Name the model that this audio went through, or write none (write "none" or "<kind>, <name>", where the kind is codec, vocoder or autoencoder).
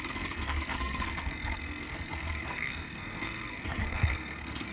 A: codec, SNAC